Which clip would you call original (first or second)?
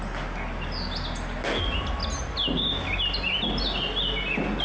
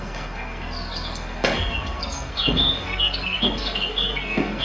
first